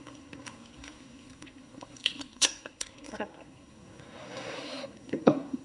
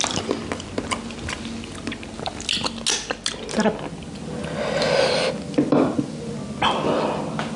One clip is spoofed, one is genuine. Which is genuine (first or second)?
second